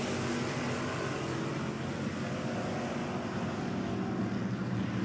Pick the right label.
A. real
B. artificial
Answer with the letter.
A